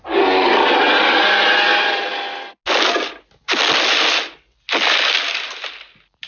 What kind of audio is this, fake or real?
real